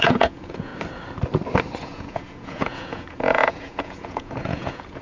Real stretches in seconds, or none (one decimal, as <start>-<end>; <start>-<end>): 0.7-1.8